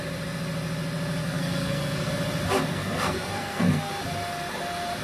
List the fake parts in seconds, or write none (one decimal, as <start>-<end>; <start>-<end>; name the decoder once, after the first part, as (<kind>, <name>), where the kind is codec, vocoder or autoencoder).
1.2-2.1 (codec, SNAC); 2.7-3.9